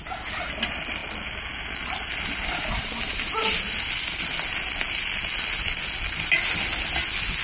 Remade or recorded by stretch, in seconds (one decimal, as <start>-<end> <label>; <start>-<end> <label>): 0.0-7.4 recorded